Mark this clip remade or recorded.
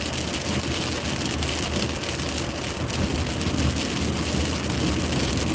recorded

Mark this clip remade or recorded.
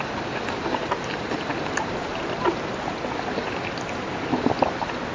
recorded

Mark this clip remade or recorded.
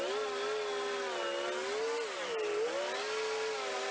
recorded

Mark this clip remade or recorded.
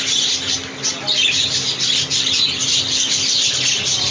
recorded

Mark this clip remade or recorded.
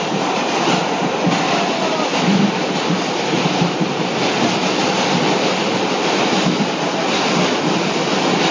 recorded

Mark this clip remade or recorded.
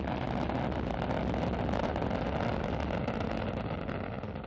recorded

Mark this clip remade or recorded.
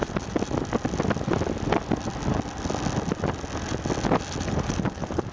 recorded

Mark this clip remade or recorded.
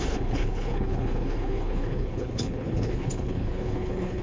remade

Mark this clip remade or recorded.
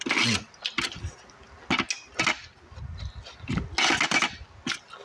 recorded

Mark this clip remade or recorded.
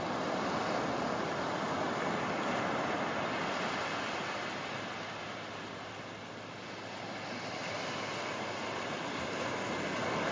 recorded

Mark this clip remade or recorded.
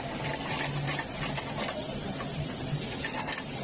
recorded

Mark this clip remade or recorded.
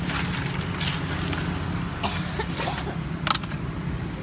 recorded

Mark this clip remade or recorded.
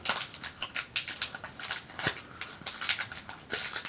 recorded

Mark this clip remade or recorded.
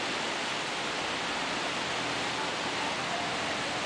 recorded